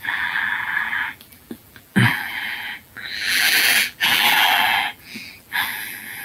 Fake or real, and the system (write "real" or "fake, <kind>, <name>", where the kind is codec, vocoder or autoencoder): fake, vocoder, BigVGAN v2